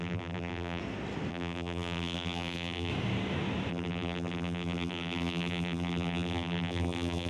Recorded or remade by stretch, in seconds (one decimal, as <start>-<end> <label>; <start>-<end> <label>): 0.0-0.8 remade; 0.8-1.3 recorded; 1.3-2.9 remade; 2.9-3.7 recorded; 3.7-7.3 remade